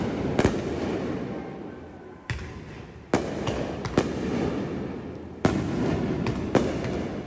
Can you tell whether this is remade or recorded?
recorded